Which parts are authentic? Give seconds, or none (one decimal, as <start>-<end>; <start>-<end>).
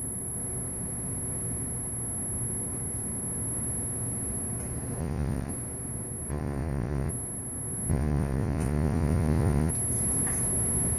0.0-5.0; 5.5-6.3; 7.1-7.9; 9.7-11.0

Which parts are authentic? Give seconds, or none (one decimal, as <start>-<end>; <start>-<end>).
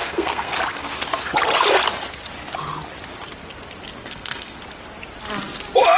0.6-4.0; 4.6-6.0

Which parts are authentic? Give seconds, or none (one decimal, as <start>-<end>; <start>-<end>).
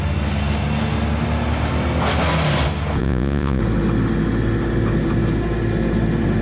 0.0-3.0; 3.6-6.4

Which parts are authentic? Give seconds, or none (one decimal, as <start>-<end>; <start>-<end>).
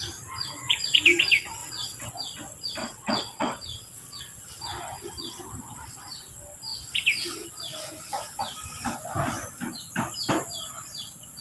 0.0-1.6; 2.1-2.8; 4.2-11.4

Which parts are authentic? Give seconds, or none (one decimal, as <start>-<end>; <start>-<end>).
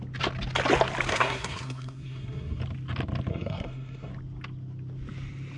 0.0-1.1; 2.6-3.3; 4.1-5.6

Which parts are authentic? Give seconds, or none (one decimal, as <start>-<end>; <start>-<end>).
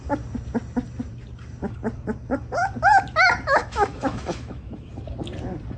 0.0-3.6; 4.9-5.8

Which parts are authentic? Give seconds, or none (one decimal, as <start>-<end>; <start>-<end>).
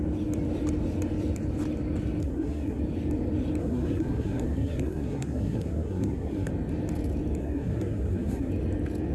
0.0-2.2; 2.8-3.6; 6.5-7.4; 8.5-9.1